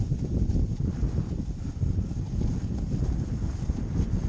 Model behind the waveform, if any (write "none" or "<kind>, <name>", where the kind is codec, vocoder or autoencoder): none